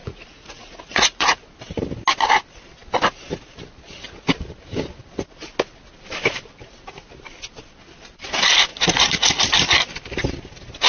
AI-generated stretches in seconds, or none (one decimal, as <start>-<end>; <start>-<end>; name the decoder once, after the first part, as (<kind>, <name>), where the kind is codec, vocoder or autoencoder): 0.0-1.4 (vocoder, Vocos); 8.7-9.4